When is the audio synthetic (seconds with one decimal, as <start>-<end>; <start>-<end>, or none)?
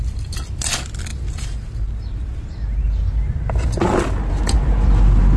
none